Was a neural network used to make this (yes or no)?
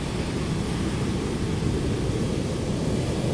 no